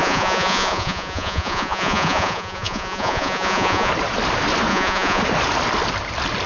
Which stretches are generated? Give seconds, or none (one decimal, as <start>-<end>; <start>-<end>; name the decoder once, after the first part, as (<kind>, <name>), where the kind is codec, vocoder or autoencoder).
0.0-3.9 (vocoder, Vocos); 4.7-5.2